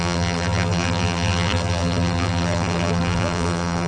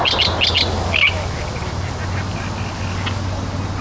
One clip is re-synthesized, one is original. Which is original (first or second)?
second